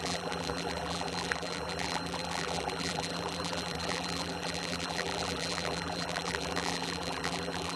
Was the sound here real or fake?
fake